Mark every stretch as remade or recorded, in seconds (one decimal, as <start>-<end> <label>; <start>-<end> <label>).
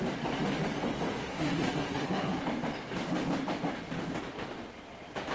0.0-1.2 recorded; 1.2-2.4 remade; 2.4-5.3 recorded